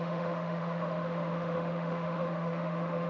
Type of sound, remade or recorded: remade